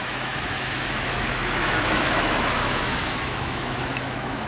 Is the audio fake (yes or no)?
yes